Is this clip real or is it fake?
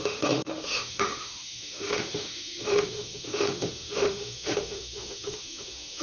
fake